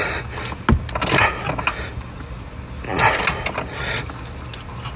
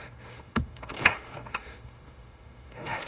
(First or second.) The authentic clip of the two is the first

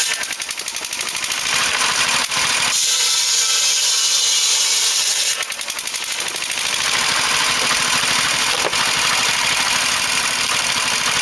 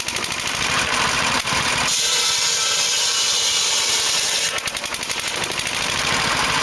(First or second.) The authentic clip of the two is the first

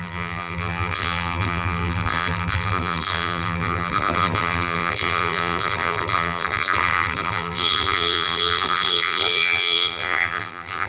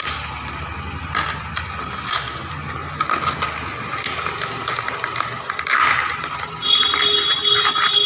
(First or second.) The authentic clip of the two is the second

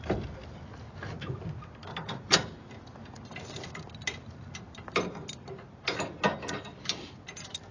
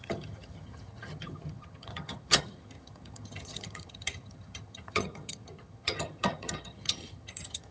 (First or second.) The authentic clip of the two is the first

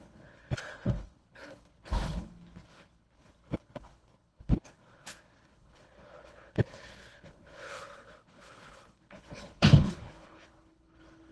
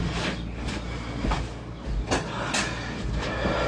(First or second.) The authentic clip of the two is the second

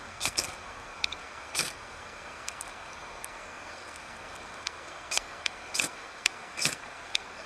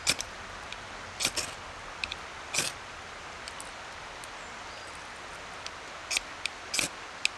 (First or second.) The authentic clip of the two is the second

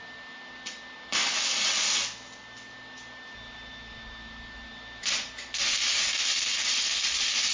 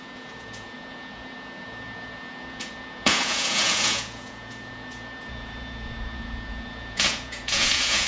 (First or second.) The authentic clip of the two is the first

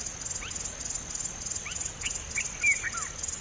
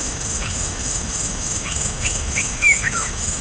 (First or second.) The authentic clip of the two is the first